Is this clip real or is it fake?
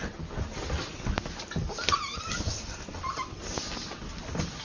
real